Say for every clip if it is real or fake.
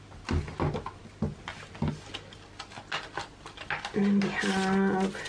real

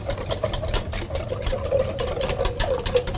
real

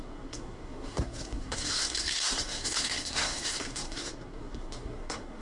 fake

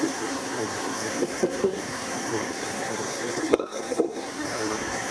fake